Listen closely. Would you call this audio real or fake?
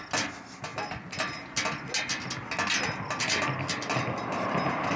real